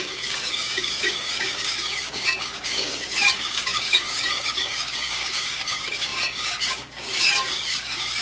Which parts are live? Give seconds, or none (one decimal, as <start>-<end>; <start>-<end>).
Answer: none